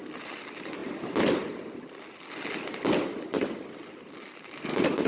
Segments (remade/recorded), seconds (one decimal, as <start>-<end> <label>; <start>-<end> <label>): 0.0-5.1 recorded